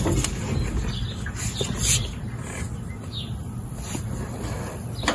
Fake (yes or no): no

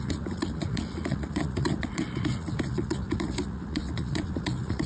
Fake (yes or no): yes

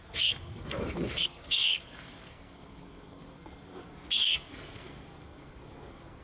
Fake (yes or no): yes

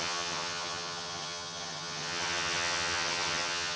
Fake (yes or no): yes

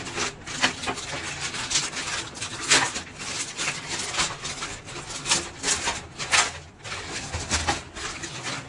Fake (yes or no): no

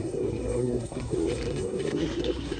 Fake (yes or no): yes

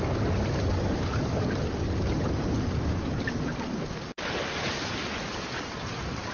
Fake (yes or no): no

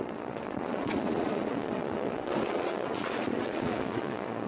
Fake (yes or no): yes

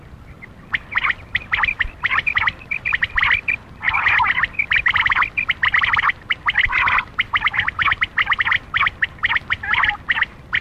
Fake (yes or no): no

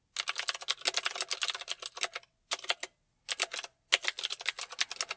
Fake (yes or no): no